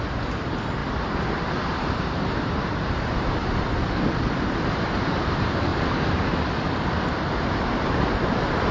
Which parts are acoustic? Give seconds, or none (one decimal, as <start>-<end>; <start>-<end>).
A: 3.4-4.1; 5.7-7.4